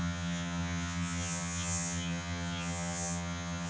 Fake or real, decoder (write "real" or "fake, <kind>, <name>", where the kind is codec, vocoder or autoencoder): fake, vocoder, HiFi-GAN